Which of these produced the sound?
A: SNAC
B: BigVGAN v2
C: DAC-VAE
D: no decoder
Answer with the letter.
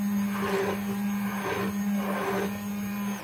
D